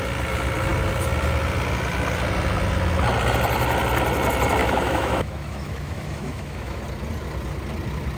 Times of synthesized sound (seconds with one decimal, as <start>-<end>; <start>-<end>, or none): 4.6-6.8